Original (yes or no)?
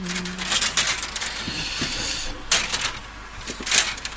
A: yes